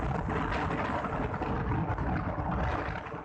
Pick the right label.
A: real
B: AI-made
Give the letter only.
A